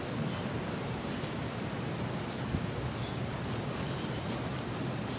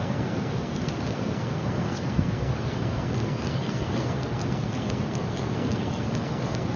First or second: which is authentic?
first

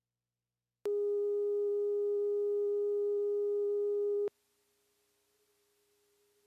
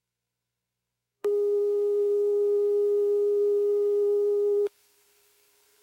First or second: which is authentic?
first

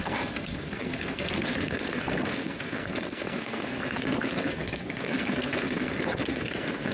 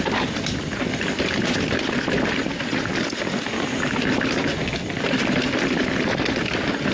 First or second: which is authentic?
second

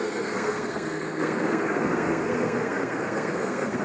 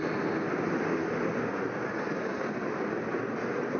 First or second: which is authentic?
second